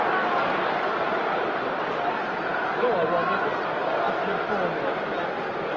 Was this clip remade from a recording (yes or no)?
no